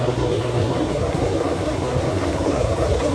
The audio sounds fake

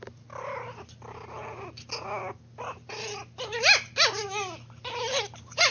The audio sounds real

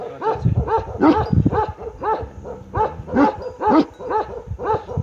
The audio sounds real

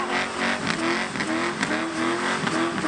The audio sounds real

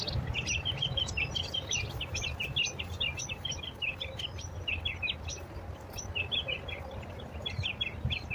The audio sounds real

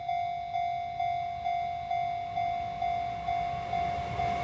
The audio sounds real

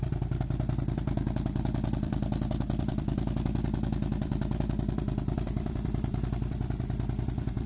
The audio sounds fake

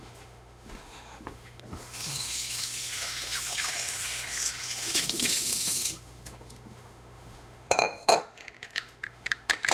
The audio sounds fake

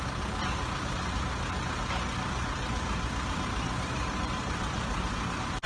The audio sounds real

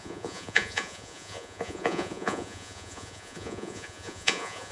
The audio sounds fake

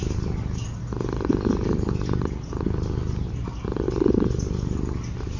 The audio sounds real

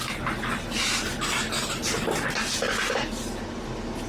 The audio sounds real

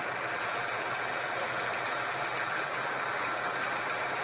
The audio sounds fake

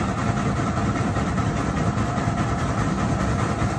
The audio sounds fake